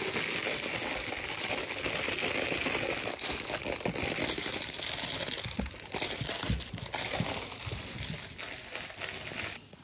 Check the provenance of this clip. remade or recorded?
recorded